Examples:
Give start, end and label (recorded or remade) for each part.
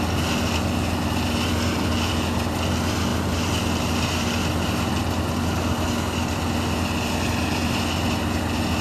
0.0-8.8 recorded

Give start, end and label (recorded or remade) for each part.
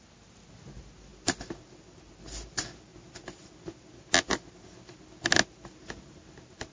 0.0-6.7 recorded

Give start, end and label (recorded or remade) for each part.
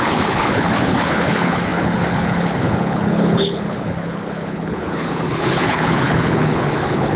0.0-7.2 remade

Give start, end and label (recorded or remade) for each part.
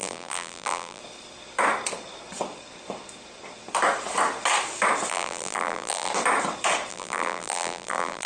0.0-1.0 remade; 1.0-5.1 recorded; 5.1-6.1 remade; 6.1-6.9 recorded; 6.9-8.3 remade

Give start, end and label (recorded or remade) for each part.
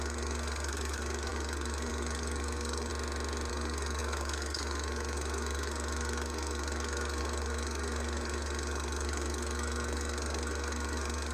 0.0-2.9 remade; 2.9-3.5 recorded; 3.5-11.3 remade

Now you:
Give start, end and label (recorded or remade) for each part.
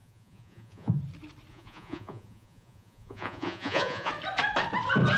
0.0-1.0 remade; 1.0-1.5 recorded; 1.5-4.1 remade; 4.1-5.2 recorded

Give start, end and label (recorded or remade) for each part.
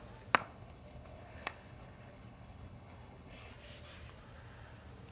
0.0-0.4 recorded; 0.4-3.5 remade; 3.5-5.1 recorded